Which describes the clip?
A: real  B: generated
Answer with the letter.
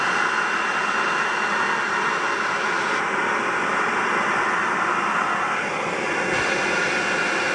A